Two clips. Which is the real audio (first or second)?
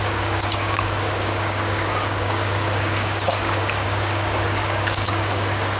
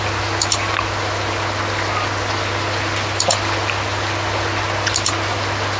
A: second